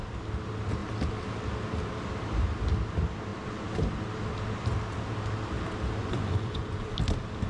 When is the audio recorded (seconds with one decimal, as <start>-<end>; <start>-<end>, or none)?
0.0-6.0; 6.9-7.5